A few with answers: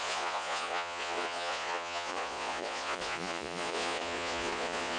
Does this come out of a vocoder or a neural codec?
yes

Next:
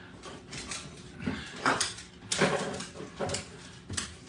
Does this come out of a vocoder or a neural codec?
no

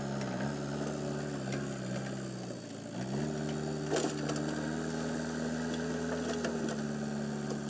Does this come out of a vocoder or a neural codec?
no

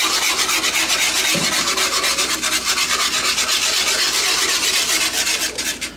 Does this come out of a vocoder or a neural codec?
no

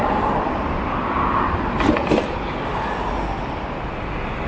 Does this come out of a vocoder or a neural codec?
no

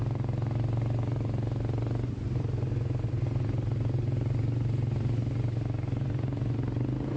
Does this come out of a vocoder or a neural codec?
no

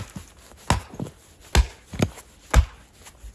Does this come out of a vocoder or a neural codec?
no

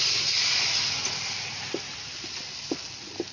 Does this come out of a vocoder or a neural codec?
no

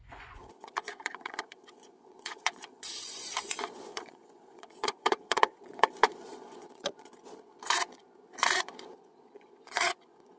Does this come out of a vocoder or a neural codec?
yes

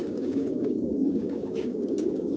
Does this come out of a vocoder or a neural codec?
yes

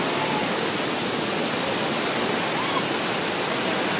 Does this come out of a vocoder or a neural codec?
no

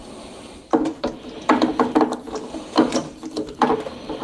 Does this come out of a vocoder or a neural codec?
no